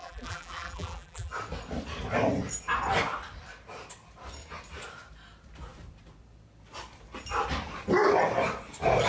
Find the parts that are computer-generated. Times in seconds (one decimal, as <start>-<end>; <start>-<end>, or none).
0.0-1.3